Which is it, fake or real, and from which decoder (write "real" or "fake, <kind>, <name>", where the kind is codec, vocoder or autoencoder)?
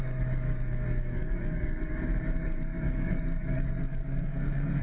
fake, codec, DAC